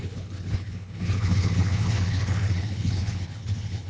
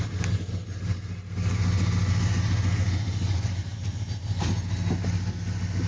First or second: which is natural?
second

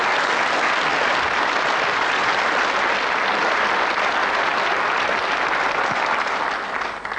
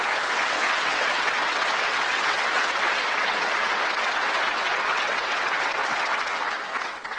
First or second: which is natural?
first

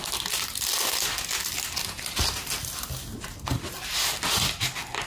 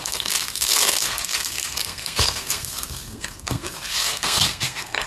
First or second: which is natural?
first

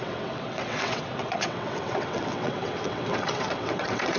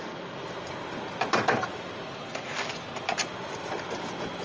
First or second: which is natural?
second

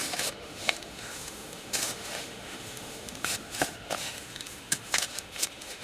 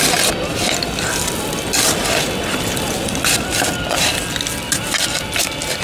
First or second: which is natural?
second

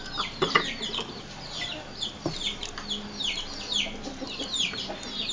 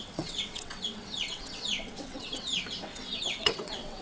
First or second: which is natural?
first